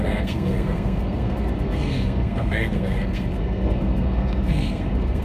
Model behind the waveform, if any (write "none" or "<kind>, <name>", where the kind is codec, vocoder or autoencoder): codec, SNAC